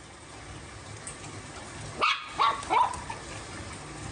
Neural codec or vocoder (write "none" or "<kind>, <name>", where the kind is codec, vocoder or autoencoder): none